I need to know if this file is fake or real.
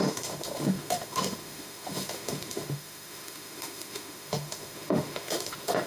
fake